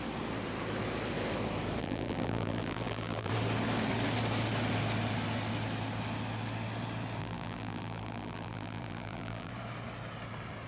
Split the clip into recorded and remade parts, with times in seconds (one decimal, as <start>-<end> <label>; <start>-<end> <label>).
0.0-1.8 recorded; 1.8-3.3 remade; 3.3-7.2 recorded; 7.2-9.5 remade; 9.5-10.7 recorded